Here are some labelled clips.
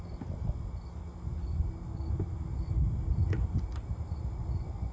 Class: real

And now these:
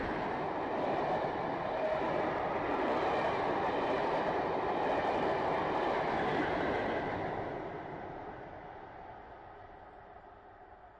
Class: real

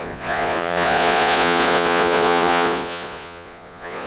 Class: fake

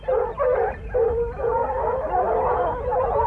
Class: real